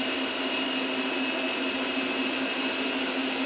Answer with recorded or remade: recorded